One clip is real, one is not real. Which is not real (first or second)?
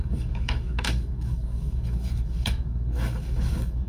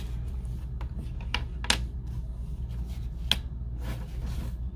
first